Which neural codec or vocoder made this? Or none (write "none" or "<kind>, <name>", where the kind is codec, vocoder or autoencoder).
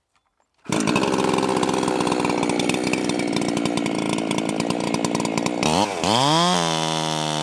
none